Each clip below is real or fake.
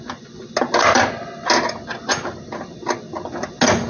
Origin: real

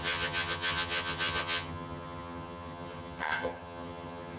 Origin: fake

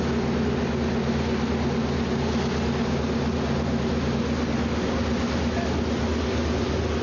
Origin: real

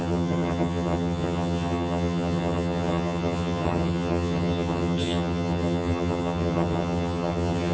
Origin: fake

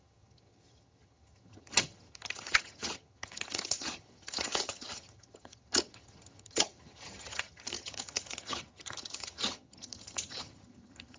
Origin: fake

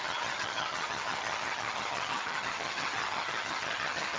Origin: fake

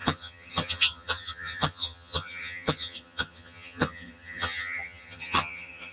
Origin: fake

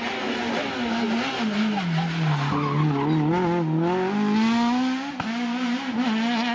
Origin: real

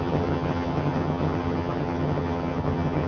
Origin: fake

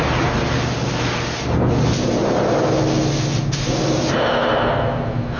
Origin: real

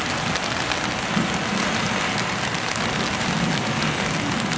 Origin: real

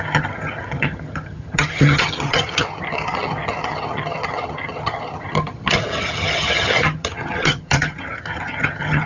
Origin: fake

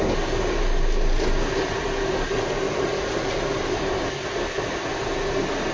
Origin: real